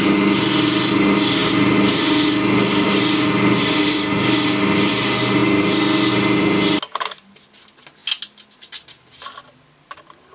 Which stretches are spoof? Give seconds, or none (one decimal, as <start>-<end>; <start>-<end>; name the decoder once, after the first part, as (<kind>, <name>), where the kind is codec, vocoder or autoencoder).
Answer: none

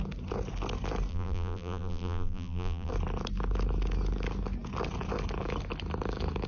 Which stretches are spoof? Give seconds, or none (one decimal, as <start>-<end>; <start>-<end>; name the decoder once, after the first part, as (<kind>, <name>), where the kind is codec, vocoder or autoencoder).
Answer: 1.1-2.9 (vocoder, BigVGAN v2)

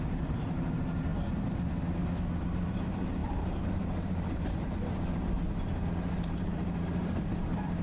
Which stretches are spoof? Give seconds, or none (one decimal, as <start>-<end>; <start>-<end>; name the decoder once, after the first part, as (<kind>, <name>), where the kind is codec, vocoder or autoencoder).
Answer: 0.0-1.1 (vocoder, BigVGAN v2); 2.7-7.8

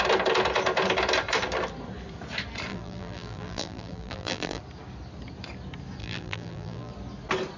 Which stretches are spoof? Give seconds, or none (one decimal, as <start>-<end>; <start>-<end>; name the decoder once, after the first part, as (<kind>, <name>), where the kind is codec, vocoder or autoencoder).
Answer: 2.7-4.6 (vocoder, BigVGAN v2); 6.0-6.9

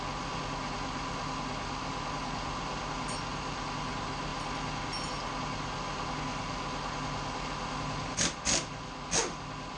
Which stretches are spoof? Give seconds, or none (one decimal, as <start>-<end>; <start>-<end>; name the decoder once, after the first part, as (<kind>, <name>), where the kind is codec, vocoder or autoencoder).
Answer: none